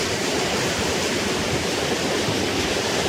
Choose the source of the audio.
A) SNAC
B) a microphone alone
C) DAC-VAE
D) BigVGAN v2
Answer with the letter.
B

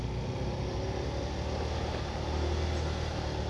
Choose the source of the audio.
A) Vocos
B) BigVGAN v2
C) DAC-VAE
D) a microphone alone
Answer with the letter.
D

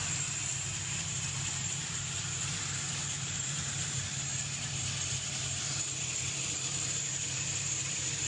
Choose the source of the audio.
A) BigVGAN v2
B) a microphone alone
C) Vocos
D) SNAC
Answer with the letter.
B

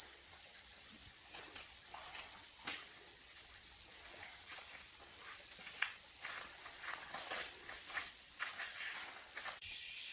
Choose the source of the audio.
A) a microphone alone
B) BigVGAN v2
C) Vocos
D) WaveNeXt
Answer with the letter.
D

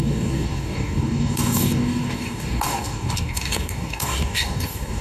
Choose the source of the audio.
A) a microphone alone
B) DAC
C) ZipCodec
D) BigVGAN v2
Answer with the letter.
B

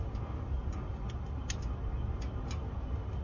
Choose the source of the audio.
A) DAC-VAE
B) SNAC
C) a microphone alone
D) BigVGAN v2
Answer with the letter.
C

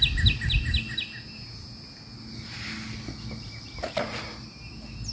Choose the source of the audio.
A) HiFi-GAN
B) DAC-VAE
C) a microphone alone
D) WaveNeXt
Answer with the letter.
C